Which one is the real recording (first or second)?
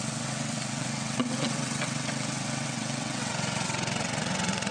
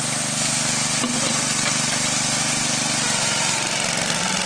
second